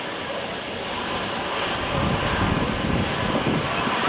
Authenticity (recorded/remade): recorded